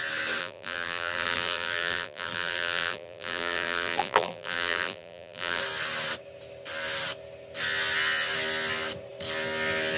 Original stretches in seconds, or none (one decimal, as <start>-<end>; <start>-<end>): 0.0-0.4; 5.6-10.0